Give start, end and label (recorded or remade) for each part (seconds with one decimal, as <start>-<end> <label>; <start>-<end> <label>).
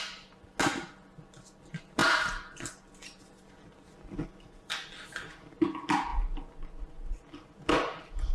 0.0-8.3 recorded